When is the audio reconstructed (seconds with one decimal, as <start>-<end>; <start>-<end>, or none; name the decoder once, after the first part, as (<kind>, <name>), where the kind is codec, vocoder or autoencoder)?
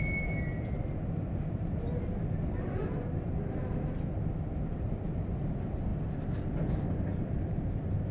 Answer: none